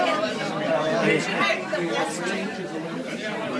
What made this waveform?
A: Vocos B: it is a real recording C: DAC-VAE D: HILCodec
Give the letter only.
B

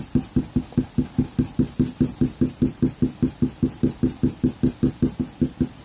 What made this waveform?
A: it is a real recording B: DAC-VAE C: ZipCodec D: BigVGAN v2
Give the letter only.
A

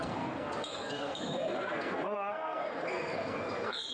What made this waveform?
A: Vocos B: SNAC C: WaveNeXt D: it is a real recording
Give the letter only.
B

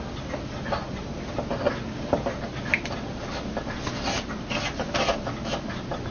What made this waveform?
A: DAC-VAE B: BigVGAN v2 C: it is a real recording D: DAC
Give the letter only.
C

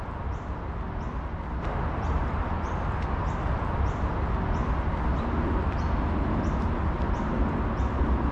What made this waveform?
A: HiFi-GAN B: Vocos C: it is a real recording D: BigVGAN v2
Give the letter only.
C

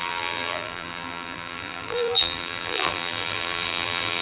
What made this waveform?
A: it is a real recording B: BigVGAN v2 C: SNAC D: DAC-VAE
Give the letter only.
B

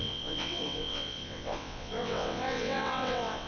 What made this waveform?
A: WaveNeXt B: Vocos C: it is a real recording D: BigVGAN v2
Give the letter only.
A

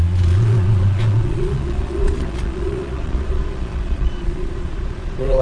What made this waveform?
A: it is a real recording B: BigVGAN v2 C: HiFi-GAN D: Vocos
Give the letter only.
D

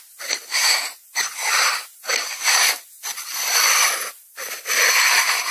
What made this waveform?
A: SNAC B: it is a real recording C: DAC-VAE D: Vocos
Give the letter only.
B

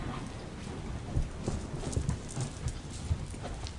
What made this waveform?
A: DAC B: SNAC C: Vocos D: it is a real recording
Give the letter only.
D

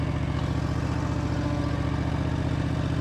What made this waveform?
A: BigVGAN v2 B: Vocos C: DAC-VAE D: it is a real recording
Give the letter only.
D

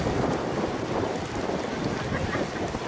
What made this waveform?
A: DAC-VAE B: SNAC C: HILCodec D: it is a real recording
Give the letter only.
D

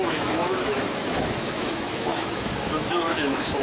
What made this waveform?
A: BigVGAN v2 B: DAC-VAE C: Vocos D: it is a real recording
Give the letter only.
B